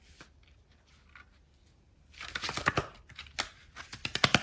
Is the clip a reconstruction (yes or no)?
no